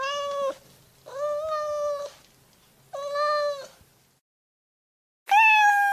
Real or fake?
real